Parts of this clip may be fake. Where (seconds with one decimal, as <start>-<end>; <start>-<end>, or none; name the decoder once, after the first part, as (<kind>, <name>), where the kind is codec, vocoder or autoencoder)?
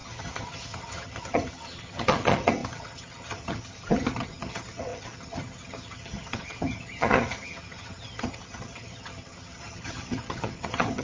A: 0.0-11.0 (vocoder, HiFi-GAN)